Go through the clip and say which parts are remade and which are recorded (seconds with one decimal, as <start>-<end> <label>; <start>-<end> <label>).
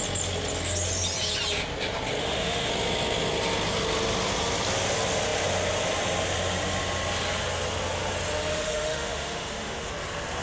0.0-2.2 recorded; 2.2-2.7 remade; 2.7-8.5 recorded; 8.5-9.9 remade; 9.9-10.4 recorded